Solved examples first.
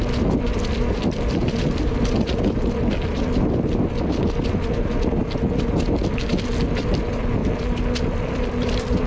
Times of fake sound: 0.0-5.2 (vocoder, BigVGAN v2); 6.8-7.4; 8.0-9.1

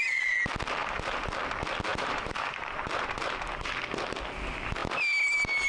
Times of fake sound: 0.8-1.4 (vocoder, BigVGAN v2); 1.9-3.7

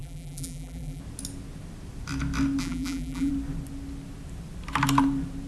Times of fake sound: 0.0-1.0 (vocoder, BigVGAN v2); 2.6-3.3